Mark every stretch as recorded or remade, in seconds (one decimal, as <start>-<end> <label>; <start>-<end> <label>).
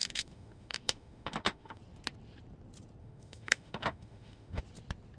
0.0-1.8 remade; 1.8-3.0 recorded; 3.0-4.6 remade; 4.6-5.2 recorded